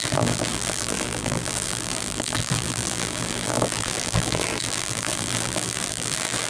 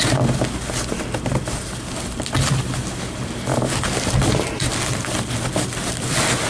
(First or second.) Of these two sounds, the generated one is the first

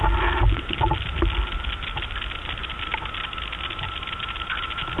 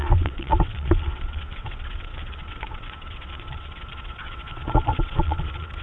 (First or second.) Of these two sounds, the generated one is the second